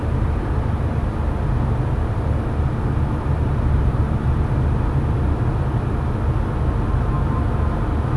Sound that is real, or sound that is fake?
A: real